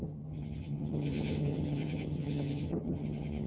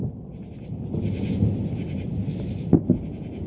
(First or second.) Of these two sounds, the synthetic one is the first